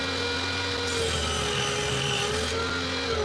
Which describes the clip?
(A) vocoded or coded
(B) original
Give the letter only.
B